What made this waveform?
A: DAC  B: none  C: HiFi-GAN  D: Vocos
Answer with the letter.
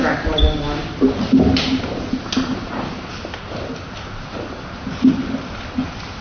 B